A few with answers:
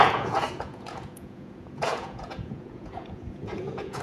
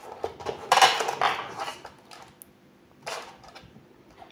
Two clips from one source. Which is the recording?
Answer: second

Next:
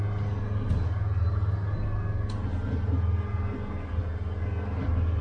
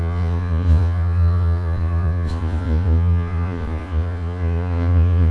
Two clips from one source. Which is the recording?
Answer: first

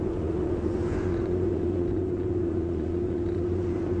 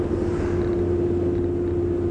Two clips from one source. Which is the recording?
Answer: second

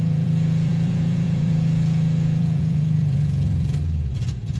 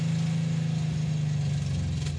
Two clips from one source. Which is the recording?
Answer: second